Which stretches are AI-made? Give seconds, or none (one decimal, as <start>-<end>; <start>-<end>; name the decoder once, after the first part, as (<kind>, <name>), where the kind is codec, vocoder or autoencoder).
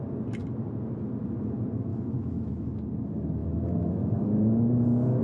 1.9-2.9 (autoencoder, DAC-VAE); 3.4-5.2